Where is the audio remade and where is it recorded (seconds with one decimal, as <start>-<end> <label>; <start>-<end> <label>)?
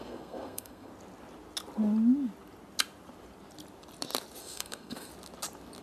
0.0-0.9 remade; 0.9-4.4 recorded; 4.4-5.1 remade; 5.1-5.8 recorded